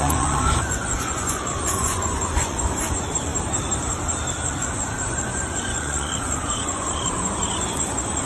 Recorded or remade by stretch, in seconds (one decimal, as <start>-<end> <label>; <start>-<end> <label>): 0.0-3.3 remade; 3.3-4.5 recorded; 4.5-8.2 remade